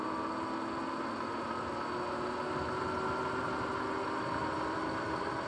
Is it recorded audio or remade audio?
recorded